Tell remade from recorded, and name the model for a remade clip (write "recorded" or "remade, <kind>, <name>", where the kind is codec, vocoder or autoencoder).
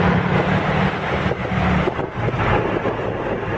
recorded